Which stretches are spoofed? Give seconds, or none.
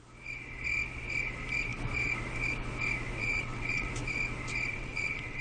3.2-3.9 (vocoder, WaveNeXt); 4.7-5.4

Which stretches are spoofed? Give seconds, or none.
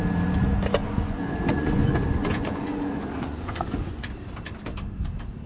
0.8-4.1 (vocoder, Vocos)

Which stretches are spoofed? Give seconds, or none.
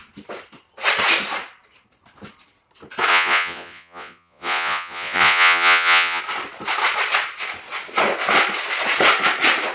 3.1-6.2 (vocoder, Vocos)